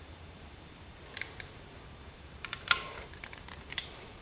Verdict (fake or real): fake